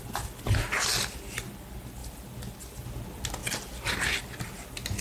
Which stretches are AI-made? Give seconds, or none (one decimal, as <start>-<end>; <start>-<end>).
2.0-3.0